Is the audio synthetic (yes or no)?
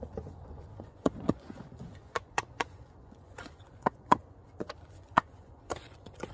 yes